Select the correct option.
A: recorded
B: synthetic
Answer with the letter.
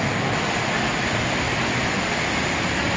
A